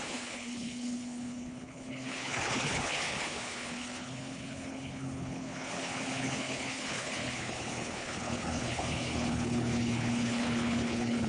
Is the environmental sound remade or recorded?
remade